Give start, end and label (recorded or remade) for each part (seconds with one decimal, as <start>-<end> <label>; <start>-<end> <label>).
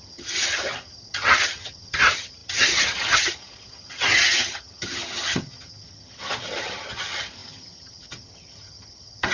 0.0-9.3 remade